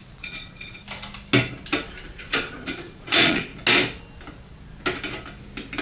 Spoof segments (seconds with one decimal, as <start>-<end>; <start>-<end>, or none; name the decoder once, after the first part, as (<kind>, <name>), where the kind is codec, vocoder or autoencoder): 0.0-0.8 (vocoder, Vocos); 2.0-3.5